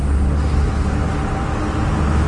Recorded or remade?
recorded